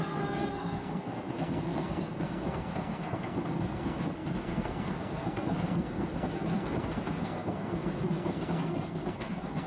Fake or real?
fake